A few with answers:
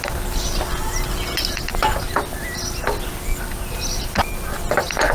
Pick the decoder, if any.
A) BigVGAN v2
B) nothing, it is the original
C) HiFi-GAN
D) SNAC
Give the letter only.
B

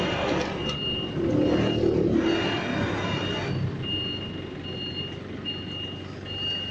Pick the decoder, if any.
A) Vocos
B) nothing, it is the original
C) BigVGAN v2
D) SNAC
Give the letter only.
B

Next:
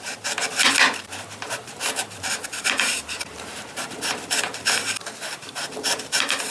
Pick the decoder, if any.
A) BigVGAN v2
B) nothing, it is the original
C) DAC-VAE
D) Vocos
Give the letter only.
A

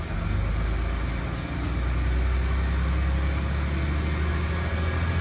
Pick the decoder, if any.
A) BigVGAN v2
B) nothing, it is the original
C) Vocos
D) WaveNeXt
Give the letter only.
B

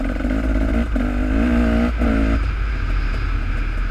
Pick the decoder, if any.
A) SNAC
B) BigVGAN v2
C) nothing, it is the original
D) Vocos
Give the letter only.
C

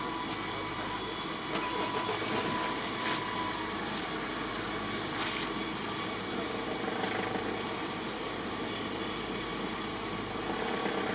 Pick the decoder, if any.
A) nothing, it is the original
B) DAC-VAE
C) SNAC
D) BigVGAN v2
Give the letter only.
A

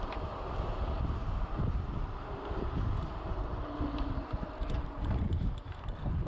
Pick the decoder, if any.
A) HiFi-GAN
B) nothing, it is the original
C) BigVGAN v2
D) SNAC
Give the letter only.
C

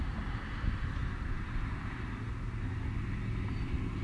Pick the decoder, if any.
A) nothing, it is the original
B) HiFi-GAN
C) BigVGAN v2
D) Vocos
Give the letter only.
C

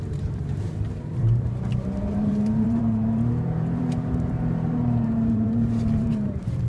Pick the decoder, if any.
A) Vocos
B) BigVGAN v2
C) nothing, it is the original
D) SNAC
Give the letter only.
B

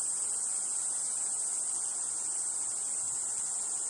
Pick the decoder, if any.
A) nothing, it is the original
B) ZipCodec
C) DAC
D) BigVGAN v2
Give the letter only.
A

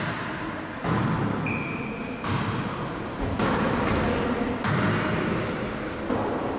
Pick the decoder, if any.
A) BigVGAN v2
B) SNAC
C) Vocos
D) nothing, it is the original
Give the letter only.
D